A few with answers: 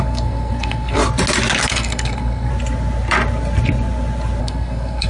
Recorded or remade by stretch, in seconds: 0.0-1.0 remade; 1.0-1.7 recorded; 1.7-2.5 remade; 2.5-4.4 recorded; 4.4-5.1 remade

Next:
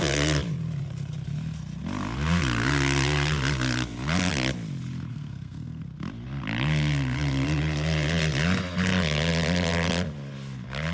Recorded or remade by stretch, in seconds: 0.0-5.1 recorded; 5.1-5.8 remade; 5.8-10.9 recorded

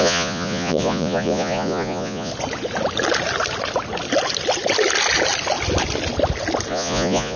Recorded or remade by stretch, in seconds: 0.0-2.3 remade; 2.3-6.7 recorded; 6.7-7.4 remade

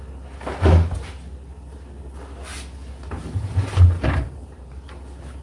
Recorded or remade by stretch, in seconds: 0.0-3.2 recorded; 3.2-4.7 remade; 4.7-5.4 recorded

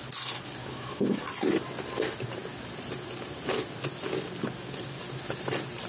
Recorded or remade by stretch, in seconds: 0.0-0.6 recorded; 0.6-1.2 remade; 1.2-5.9 recorded

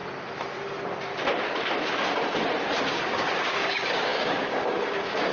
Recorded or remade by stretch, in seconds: 0.0-2.9 recorded; 2.9-5.3 remade

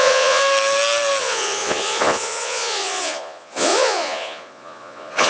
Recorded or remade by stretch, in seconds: 0.0-0.4 remade; 0.4-1.2 recorded; 1.2-5.3 remade